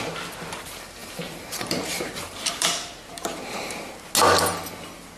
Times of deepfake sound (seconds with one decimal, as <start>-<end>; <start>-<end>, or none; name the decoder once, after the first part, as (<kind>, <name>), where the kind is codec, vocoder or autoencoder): 1.0-4.1 (vocoder, BigVGAN v2)